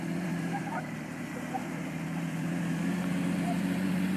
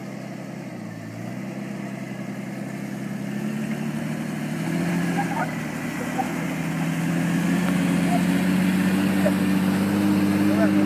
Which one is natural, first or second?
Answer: second